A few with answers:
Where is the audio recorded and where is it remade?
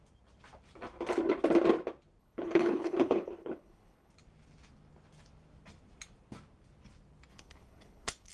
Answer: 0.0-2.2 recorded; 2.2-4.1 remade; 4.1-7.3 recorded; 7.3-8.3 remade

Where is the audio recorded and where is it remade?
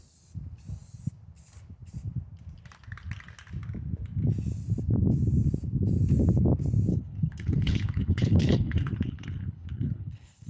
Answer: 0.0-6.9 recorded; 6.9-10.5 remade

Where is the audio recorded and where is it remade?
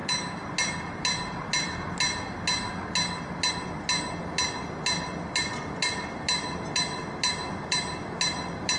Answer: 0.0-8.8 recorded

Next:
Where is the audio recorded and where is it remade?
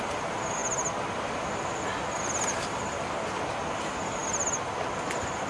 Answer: 0.0-5.5 recorded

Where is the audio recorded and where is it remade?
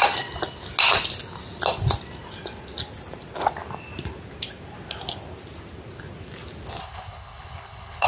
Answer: 0.0-6.8 recorded; 6.8-8.1 remade